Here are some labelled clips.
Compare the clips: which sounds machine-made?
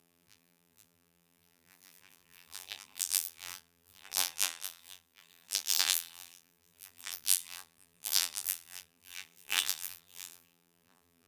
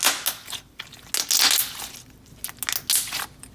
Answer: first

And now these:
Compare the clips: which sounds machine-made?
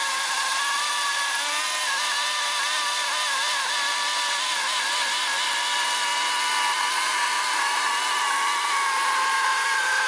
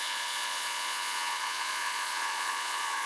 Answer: second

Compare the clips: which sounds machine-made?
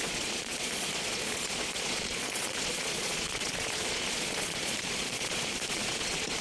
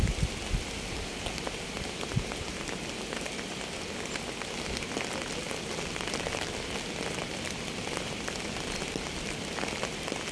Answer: first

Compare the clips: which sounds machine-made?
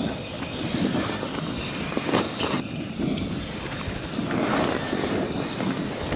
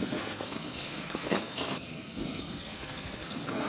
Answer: second